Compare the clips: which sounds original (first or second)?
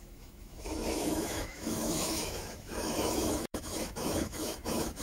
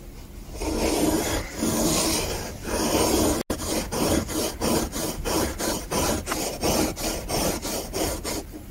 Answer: second